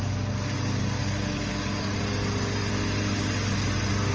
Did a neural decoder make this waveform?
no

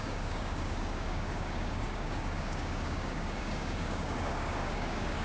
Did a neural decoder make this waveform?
yes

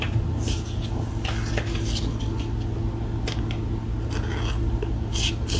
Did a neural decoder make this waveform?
no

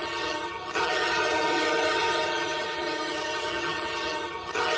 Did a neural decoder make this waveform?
yes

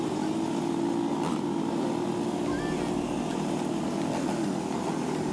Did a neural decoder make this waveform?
no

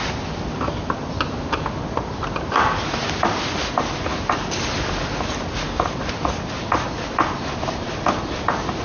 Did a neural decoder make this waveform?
no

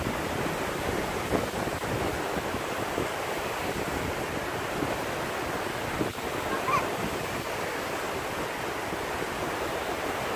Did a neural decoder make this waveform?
no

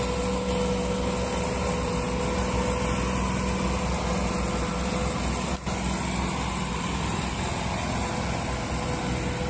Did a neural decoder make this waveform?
no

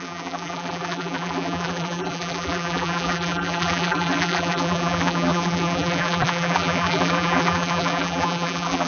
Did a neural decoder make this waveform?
yes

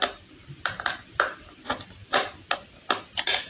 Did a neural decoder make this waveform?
no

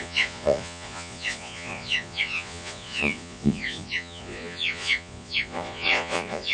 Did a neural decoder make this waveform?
yes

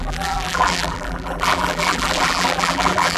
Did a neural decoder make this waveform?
yes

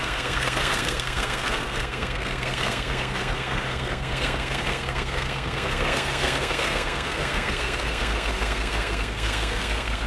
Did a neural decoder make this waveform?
yes